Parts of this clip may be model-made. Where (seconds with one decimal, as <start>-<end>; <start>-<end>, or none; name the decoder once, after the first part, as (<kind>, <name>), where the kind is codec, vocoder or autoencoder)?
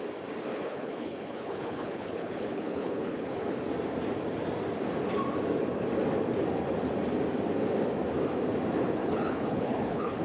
0.5-3.6 (codec, HILCodec); 9.0-10.2